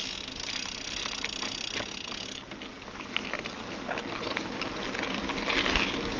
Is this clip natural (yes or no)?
yes